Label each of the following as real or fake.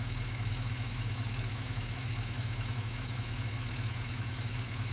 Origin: fake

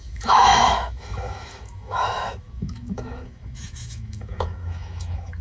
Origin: fake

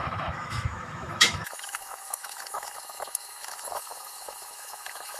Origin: fake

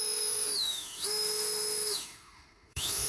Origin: fake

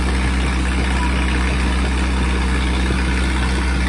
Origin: real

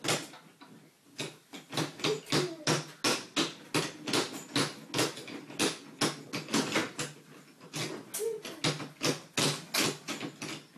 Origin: real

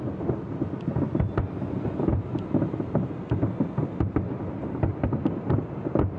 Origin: real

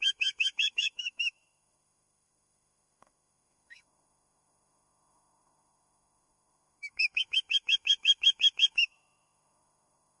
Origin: fake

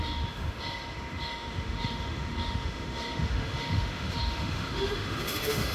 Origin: fake